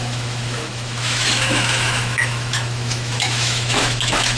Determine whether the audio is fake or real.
fake